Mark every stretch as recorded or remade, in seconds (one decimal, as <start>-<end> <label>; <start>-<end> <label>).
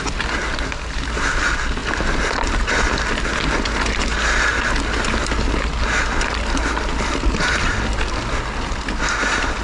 0.0-9.6 recorded